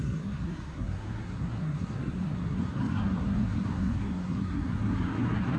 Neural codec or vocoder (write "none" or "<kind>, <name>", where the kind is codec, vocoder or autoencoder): codec, SNAC